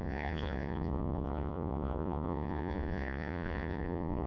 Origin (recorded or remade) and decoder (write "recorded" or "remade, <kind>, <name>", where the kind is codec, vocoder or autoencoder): remade, vocoder, Vocos